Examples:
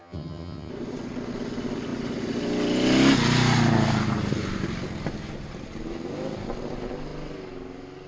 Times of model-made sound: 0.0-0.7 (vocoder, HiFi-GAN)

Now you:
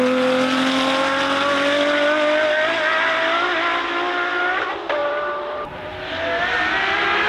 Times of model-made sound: 5.0-5.9 (vocoder, BigVGAN v2)